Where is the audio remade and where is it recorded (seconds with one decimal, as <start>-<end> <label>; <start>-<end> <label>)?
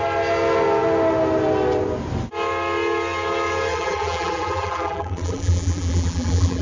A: 0.0-3.7 recorded; 3.7-6.6 remade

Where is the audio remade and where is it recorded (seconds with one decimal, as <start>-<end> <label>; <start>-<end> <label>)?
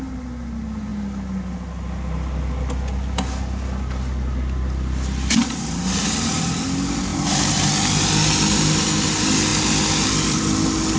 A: 0.0-7.1 recorded; 7.1-7.7 remade; 7.7-9.5 recorded; 9.5-10.4 remade; 10.4-11.0 recorded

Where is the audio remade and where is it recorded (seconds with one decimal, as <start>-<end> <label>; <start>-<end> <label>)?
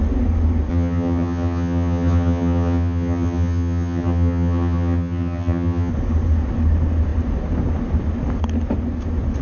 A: 0.0-0.7 recorded; 0.7-5.9 remade; 5.9-9.4 recorded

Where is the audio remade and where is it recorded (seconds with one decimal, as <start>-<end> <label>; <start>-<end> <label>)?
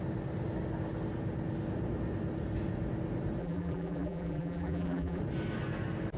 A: 0.0-3.4 recorded; 3.4-5.2 remade; 5.2-6.2 recorded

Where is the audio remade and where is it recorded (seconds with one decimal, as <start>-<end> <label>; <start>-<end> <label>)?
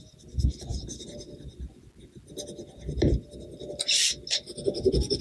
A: 0.0-5.2 recorded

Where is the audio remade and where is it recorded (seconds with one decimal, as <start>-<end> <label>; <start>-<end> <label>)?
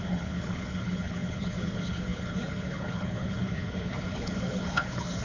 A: 0.0-5.2 remade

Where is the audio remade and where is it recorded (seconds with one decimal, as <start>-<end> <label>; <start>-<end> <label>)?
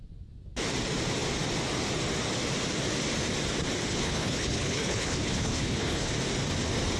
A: 0.0-3.9 recorded; 3.9-6.1 remade; 6.1-7.0 recorded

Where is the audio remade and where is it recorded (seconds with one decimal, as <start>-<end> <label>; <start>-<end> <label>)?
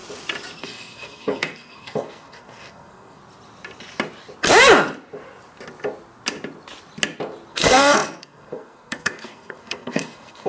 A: 0.0-0.6 recorded; 0.6-3.2 remade; 3.2-7.5 recorded; 7.5-10.5 remade